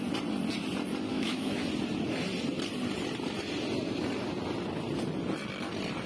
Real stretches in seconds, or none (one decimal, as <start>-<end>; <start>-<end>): 0.0-1.1; 1.6-6.1